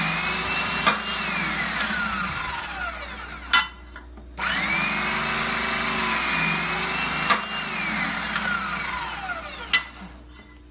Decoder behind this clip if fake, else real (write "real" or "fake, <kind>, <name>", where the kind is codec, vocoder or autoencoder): real